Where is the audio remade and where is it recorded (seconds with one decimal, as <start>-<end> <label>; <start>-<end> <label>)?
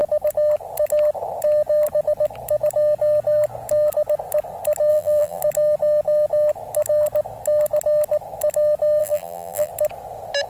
0.0-4.9 recorded; 4.9-5.4 remade; 5.4-9.0 recorded; 9.0-9.7 remade; 9.7-10.5 recorded